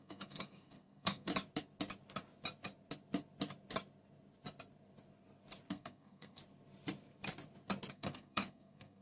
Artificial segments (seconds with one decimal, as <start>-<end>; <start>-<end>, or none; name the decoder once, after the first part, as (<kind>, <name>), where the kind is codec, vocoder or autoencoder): 0.0-1.3 (codec, SNAC); 5.7-6.4; 7.9-9.0